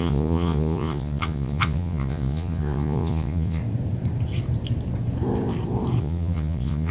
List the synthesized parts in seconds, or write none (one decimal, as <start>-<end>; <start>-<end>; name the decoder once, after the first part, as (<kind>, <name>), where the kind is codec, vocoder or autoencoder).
0.0-3.6 (vocoder, Vocos); 6.0-6.9